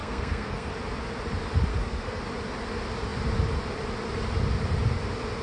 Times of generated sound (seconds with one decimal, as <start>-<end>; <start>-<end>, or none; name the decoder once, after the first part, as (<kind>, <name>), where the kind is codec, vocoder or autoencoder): 0.0-0.7 (codec, SNAC); 1.7-2.2